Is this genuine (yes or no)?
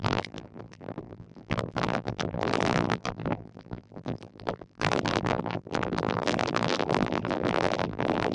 no